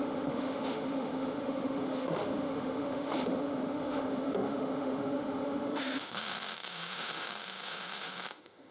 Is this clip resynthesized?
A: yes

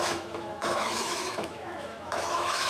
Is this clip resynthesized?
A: yes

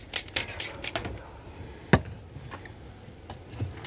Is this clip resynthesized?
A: no